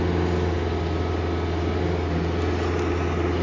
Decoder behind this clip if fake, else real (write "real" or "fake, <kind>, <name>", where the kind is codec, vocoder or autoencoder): real